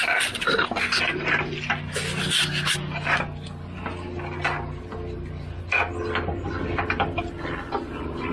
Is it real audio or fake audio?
real